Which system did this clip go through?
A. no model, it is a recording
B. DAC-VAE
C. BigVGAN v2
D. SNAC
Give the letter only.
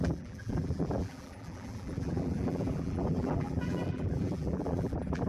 C